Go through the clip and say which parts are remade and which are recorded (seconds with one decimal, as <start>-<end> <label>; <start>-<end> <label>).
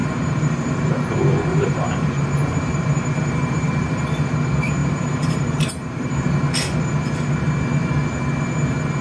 0.0-0.8 remade; 0.8-1.5 recorded; 1.5-4.3 remade; 4.3-4.8 recorded; 4.8-6.4 remade; 6.4-9.0 recorded